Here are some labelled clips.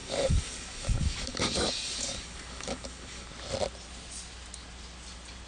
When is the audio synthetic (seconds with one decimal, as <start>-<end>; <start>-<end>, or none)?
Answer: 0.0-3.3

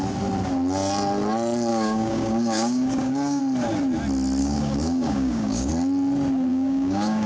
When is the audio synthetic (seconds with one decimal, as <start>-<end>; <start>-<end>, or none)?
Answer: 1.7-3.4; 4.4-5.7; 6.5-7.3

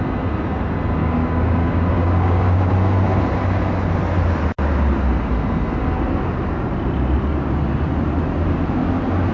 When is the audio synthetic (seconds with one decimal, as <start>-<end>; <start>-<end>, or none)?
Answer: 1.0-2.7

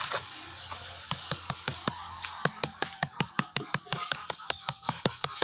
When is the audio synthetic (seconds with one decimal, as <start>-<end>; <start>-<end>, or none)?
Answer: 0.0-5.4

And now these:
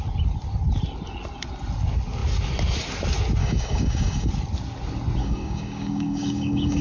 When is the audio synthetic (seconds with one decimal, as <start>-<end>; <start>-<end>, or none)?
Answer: 3.4-4.3; 5.2-6.8

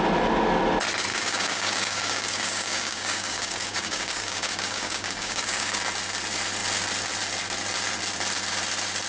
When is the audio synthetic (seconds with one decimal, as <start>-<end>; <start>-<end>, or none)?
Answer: 1.1-5.8

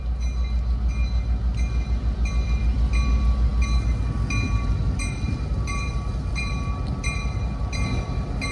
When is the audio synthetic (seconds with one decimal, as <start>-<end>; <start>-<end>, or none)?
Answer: none

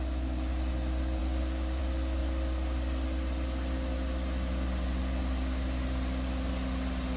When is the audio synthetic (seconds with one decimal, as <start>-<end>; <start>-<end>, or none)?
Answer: 1.2-1.8